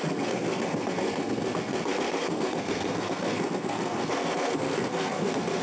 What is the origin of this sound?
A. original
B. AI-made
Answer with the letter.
B